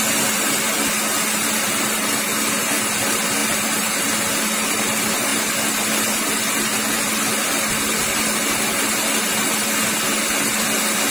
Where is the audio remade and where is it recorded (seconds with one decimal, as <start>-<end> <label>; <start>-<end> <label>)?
0.0-3.4 recorded; 3.4-4.8 remade; 4.8-11.1 recorded